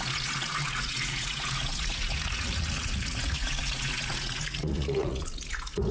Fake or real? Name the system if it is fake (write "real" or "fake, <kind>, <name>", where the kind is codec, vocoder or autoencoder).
fake, vocoder, Vocos